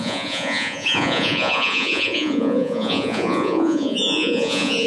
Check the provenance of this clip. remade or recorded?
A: remade